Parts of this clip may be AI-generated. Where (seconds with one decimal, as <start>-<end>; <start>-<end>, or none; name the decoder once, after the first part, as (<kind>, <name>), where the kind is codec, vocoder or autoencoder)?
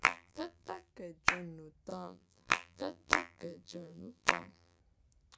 0.0-0.9 (vocoder, BigVGAN v2); 1.9-4.8